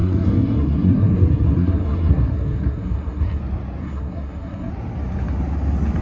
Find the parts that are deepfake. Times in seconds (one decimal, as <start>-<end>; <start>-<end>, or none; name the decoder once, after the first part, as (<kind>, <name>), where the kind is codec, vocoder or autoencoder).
0.0-3.4 (codec, SNAC); 3.8-4.7